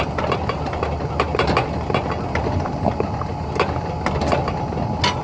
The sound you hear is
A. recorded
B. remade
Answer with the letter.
A